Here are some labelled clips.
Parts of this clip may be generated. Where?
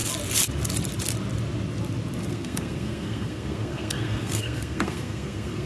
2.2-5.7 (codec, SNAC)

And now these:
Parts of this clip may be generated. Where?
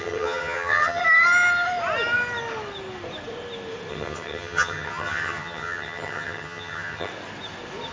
0.0-1.0 (vocoder, HiFi-GAN); 3.9-7.1